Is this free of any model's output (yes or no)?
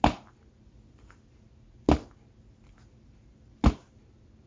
yes